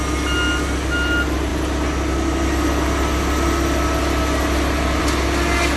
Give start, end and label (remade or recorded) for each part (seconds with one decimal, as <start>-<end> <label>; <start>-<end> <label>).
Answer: 0.0-5.8 recorded